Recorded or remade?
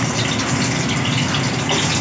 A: recorded